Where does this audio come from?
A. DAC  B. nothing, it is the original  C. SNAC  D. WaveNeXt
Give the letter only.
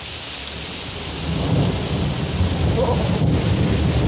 B